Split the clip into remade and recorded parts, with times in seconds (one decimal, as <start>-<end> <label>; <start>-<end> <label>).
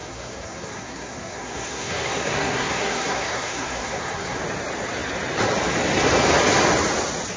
0.0-4.4 remade; 4.4-7.4 recorded